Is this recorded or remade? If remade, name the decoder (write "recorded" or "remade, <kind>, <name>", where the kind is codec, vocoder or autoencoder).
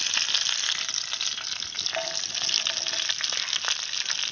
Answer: recorded